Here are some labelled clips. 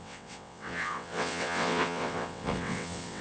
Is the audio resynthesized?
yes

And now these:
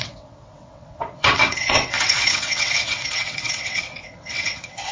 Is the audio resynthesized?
yes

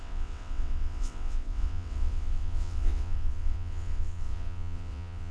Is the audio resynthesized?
yes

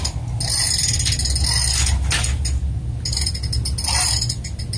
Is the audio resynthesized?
no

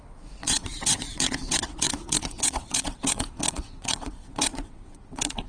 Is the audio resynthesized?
yes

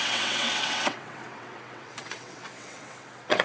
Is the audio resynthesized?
yes